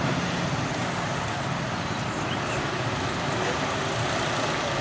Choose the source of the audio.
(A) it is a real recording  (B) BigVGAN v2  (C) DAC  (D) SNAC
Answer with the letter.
A